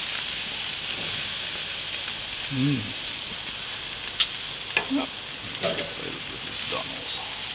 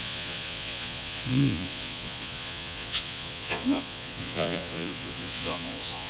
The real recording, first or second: first